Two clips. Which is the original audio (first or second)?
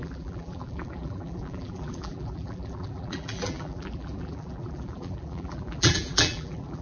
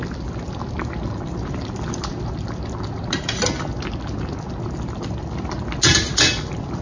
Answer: second